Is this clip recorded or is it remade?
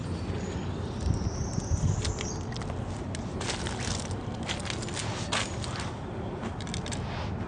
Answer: recorded